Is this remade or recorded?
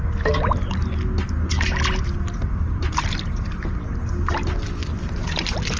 recorded